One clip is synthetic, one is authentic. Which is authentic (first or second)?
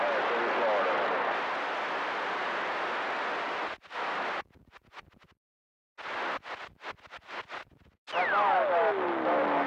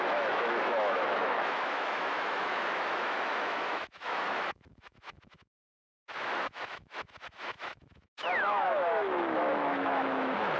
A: first